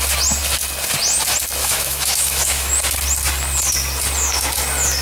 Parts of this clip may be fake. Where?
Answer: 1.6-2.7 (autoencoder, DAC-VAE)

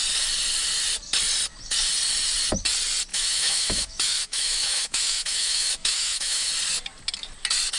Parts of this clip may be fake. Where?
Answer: 3.1-6.5 (autoencoder, DAC-VAE)